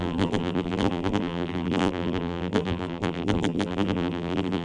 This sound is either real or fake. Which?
fake